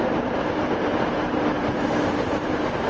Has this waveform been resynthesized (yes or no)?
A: yes